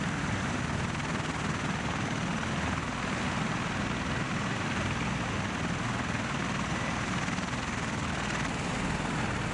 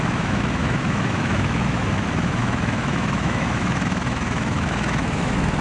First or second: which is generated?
second